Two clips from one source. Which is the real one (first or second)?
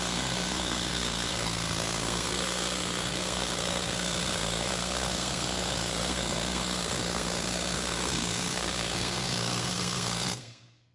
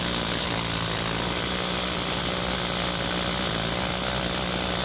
second